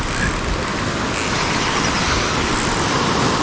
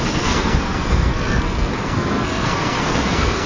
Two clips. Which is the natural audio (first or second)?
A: first